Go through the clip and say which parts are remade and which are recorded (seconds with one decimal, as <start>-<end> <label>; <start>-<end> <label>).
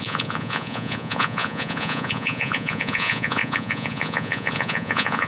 0.0-5.3 remade